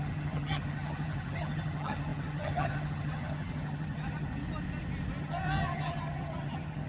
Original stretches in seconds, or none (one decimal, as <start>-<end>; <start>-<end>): 4.4-5.2